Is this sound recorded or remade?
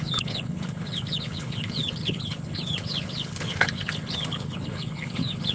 remade